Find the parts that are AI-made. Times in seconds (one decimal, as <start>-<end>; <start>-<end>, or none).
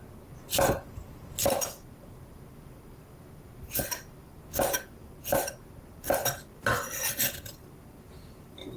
none